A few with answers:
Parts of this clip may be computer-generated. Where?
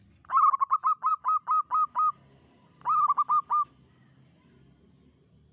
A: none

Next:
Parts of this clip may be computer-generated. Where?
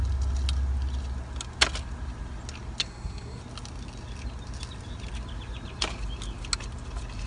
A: 2.8-3.4 (codec, SNAC)